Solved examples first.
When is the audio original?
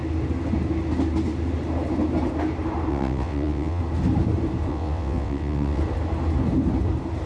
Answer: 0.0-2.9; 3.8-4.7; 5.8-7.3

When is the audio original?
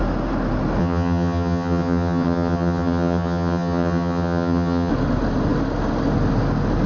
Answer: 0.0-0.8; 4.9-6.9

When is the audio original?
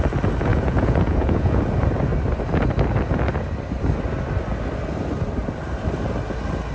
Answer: 0.0-0.5; 1.6-6.7